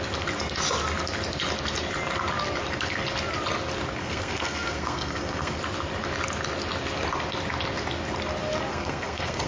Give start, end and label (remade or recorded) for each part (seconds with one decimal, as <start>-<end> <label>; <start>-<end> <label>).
0.0-4.0 recorded; 4.0-5.6 remade; 5.6-8.7 recorded; 8.7-9.5 remade